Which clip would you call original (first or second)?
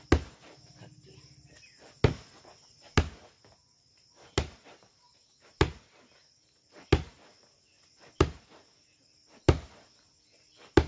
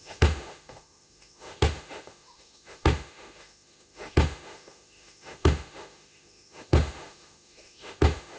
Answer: first